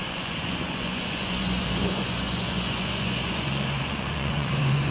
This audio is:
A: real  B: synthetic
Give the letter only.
B